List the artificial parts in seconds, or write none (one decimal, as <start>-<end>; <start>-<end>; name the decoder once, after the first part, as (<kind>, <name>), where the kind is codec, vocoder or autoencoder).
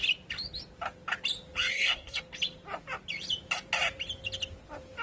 1.7-2.2 (codec, SNAC)